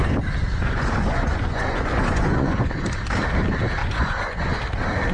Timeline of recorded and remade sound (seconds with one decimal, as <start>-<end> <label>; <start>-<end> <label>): 0.0-0.5 recorded; 0.5-2.8 remade; 2.8-3.8 recorded; 3.8-4.6 remade; 4.6-5.1 recorded